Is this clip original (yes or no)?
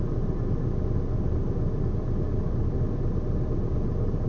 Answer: yes